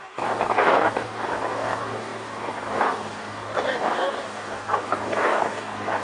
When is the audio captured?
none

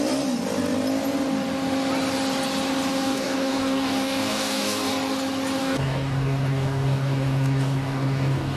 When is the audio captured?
0.0-2.9; 4.9-5.6

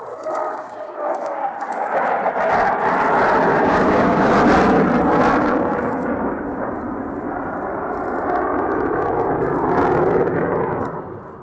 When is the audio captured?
0.0-0.5; 2.1-3.5; 4.3-5.4; 6.7-8.5; 9.3-11.4

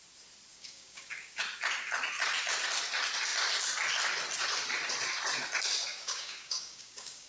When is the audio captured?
0.0-0.5; 1.4-5.9

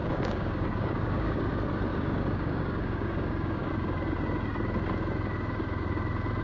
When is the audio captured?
1.5-1.9; 3.7-6.4

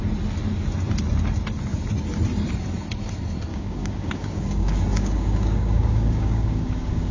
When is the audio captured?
0.0-3.5